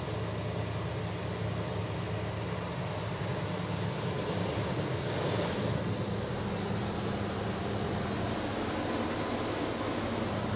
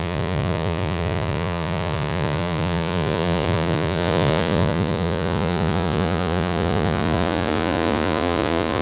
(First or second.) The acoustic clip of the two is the first